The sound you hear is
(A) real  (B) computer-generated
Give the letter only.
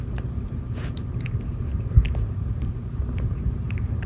B